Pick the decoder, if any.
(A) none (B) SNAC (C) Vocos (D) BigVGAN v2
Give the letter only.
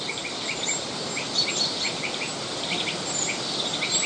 A